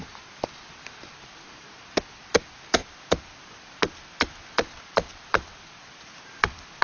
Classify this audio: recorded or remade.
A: recorded